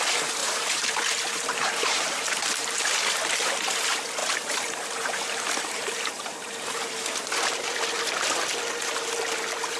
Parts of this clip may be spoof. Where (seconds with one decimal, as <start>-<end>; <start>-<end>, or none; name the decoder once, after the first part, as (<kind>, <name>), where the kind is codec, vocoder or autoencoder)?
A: 0.4-2.8 (vocoder, BigVGAN v2); 4.2-7.8